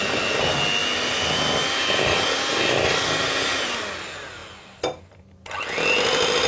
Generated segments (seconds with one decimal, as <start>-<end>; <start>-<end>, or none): none